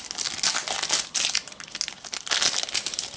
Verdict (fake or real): real